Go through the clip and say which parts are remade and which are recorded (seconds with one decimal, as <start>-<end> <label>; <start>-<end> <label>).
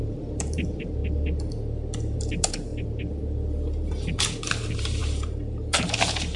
0.0-1.0 remade; 1.0-2.0 recorded; 2.0-2.7 remade; 2.7-4.5 recorded; 4.5-6.4 remade